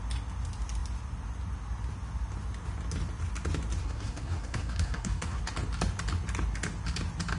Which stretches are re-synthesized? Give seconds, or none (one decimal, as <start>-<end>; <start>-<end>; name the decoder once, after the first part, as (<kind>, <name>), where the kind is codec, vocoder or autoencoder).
3.8-5.4 (codec, SNAC)